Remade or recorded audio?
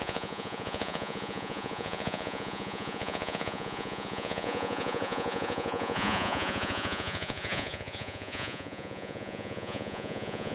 remade